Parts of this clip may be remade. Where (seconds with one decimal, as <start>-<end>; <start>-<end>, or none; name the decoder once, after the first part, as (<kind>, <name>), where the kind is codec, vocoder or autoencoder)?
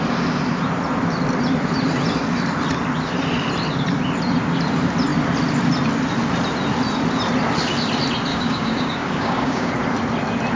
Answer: 8.3-9.7 (codec, DAC)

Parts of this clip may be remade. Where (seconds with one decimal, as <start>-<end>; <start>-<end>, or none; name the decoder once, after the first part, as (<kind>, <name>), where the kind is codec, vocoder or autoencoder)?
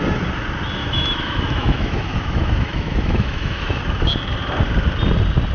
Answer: 0.8-4.1 (autoencoder, DAC-VAE)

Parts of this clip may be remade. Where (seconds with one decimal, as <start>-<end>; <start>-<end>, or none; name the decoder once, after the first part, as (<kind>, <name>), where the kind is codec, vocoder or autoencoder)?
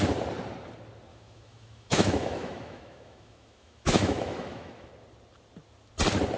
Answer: 1.1-4.9 (autoencoder, DAC-VAE)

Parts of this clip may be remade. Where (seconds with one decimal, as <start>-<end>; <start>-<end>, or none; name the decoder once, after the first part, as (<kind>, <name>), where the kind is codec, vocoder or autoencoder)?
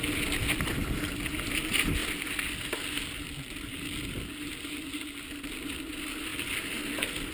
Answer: none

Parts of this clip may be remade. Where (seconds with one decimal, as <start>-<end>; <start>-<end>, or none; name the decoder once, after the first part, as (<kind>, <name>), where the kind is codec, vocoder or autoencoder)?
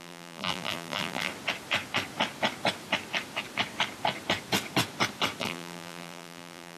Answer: 0.0-1.3 (vocoder, BigVGAN v2); 5.4-6.8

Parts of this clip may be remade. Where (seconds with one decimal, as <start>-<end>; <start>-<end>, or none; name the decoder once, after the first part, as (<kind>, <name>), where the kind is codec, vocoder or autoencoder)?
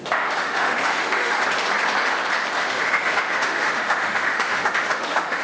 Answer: 0.0-1.4 (autoencoder, DAC-VAE); 2.6-5.4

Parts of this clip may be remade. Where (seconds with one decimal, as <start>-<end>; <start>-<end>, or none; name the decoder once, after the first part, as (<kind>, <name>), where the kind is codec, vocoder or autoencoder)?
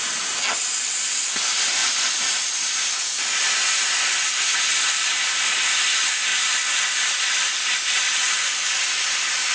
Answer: 1.8-3.3 (vocoder, BigVGAN v2); 4.7-5.8; 6.3-9.5